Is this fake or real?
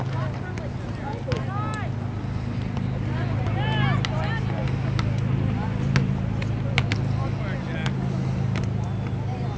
real